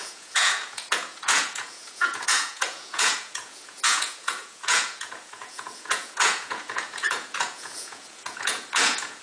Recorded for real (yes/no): no